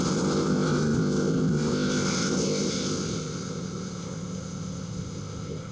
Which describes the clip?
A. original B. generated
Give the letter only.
B